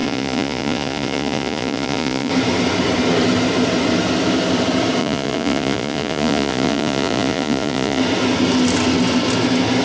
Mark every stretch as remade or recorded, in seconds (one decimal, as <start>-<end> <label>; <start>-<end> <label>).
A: 0.0-2.3 remade; 2.3-5.0 recorded; 5.0-8.0 remade; 8.0-9.8 recorded